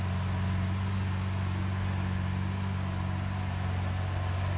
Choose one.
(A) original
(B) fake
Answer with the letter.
A